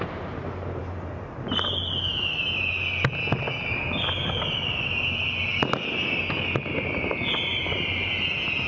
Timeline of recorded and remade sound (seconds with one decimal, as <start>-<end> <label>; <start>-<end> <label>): 0.0-8.7 recorded